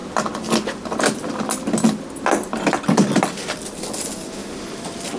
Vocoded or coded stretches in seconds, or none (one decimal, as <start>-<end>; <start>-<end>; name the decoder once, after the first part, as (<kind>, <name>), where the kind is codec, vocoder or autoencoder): none